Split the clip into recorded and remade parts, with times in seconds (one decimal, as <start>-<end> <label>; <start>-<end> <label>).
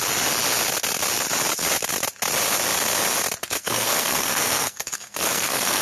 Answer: 0.0-3.4 recorded; 3.4-5.8 remade